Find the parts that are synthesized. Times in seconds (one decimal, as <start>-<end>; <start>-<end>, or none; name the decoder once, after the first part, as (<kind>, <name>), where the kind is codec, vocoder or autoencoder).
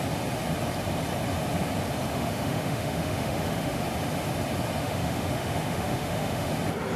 2.1-3.8 (autoencoder, DAC-VAE); 4.8-6.5